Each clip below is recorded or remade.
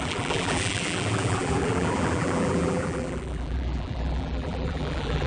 remade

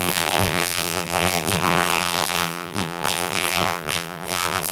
remade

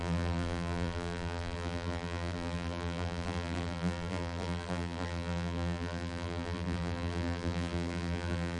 remade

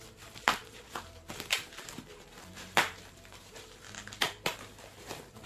remade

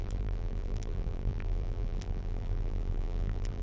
remade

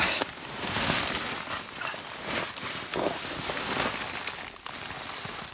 recorded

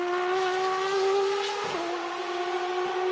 recorded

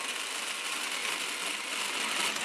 recorded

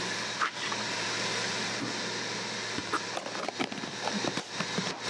remade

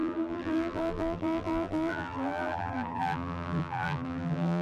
remade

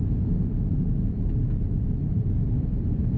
remade